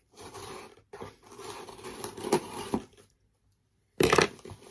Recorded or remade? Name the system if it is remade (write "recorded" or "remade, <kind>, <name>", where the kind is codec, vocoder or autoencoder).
remade, vocoder, BigVGAN v2